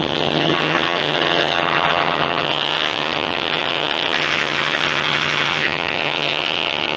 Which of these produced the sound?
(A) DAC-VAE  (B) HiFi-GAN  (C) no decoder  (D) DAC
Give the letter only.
B